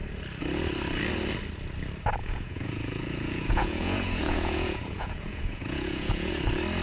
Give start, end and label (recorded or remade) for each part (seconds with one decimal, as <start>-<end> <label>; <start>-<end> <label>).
0.0-2.2 recorded; 2.2-6.3 remade; 6.3-6.8 recorded